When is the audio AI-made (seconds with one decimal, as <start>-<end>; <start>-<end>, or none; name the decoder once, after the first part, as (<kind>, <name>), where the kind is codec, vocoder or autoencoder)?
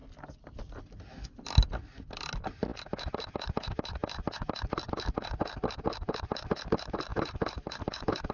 none